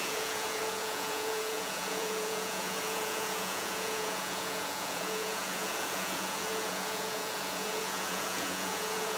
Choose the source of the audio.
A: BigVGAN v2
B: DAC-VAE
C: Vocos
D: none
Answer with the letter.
C